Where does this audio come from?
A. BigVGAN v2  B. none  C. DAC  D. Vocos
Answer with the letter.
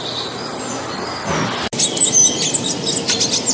B